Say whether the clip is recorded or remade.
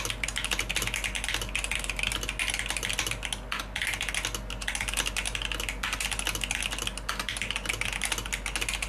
recorded